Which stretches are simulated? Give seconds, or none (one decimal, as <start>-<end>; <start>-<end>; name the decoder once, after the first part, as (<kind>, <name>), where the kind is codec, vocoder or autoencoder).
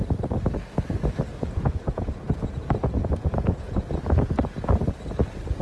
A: 1.3-3.8 (vocoder, Vocos)